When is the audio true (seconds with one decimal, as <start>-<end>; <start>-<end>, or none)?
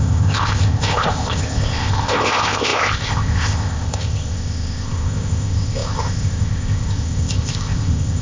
none